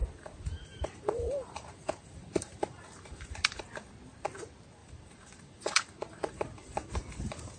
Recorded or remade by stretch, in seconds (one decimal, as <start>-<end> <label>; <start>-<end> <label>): 0.0-3.6 remade; 3.6-4.8 recorded; 4.8-7.6 remade